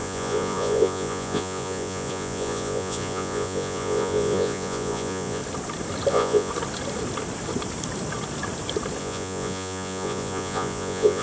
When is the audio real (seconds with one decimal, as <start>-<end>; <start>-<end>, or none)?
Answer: 5.4-6.1; 6.5-9.0